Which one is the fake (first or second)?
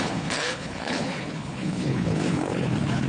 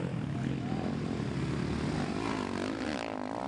first